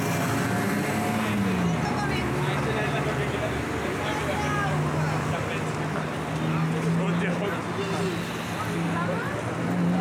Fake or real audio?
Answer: real